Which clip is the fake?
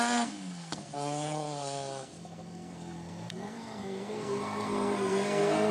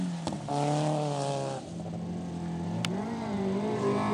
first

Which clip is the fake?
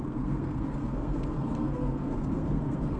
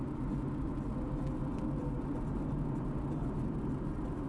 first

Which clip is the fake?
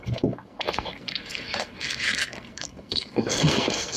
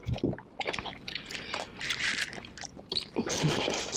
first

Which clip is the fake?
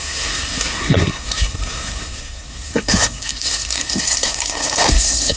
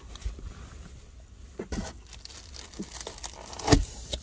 first